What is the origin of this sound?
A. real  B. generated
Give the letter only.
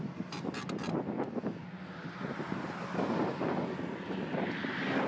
A